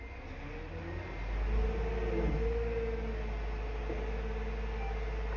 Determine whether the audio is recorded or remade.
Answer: recorded